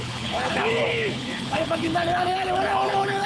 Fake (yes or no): yes